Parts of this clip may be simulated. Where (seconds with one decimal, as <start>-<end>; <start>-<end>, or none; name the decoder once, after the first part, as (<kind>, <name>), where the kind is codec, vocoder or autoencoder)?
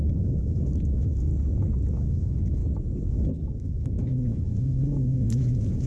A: 0.0-1.3 (autoencoder, DAC-VAE); 1.9-2.6; 3.1-5.9